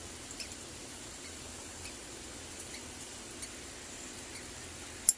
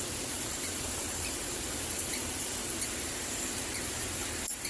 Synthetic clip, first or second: second